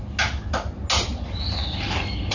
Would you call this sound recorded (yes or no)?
yes